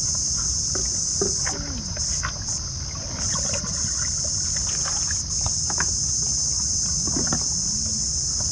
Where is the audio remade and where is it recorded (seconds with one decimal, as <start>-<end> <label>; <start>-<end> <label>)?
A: 0.0-8.5 recorded